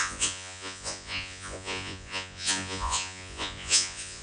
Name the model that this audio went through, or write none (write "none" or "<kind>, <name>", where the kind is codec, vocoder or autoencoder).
vocoder, Vocos